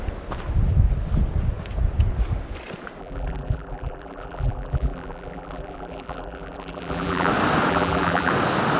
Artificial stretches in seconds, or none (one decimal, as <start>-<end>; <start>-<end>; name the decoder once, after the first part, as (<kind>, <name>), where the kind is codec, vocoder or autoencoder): 3.0-7.3 (vocoder, BigVGAN v2); 7.7-8.3